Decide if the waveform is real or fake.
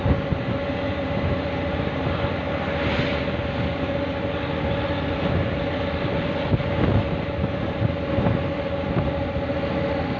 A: real